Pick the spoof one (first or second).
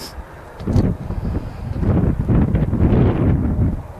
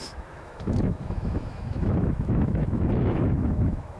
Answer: second